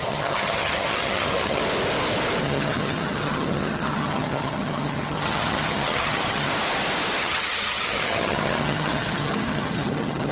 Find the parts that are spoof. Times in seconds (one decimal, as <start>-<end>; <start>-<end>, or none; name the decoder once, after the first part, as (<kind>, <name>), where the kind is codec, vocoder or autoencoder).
0.0-1.6 (vocoder, HiFi-GAN); 2.4-6.5; 7.2-10.3